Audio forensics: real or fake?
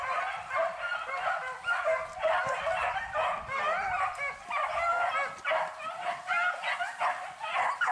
real